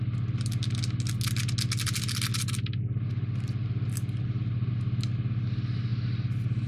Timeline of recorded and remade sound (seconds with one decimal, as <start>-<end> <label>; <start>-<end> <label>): 0.0-6.7 recorded